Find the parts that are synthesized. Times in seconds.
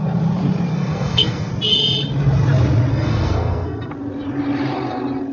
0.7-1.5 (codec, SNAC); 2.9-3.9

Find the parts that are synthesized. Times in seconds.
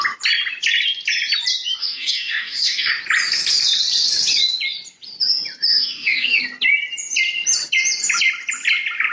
1.8-2.9 (codec, DAC); 5.7-6.4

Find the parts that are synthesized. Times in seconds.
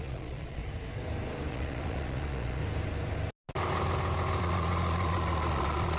0.0-0.6 (vocoder, Vocos); 1.5-2.6; 4.4-6.0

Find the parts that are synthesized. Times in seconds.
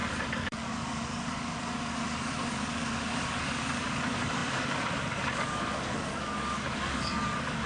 0.0-7.7 (codec, DAC)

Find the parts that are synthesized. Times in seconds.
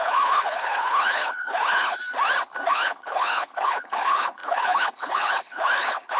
0.0-2.0 (codec, HILCodec); 2.7-6.2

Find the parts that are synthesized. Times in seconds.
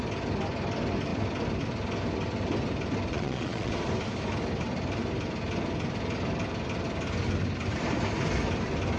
3.1-3.7 (vocoder, Vocos)